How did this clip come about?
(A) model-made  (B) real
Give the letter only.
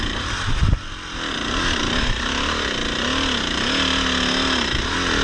B